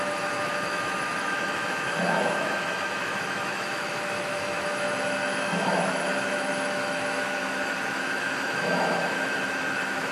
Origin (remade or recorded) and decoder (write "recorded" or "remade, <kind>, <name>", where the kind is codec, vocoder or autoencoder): remade, autoencoder, DAC-VAE